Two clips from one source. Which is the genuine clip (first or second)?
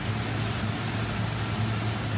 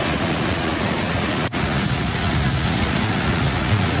first